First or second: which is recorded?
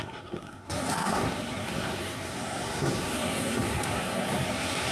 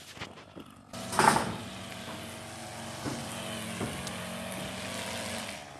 second